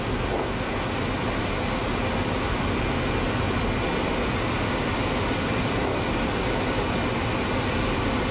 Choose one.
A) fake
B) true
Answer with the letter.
B